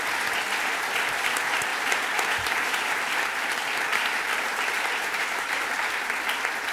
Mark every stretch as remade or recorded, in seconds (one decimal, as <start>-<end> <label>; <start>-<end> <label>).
0.0-1.7 recorded; 1.7-3.0 remade; 3.0-3.9 recorded; 3.9-5.9 remade; 5.9-6.7 recorded